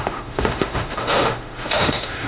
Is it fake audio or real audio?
fake